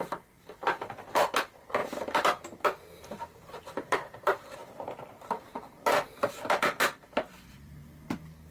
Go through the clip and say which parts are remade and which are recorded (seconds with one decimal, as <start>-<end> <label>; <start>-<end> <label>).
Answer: 0.0-1.8 remade; 1.8-3.0 recorded; 3.0-7.8 remade; 7.8-8.5 recorded